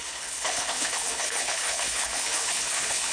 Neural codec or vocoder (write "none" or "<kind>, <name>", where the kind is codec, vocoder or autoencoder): codec, HILCodec